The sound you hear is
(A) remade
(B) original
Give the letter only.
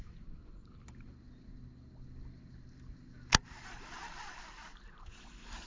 B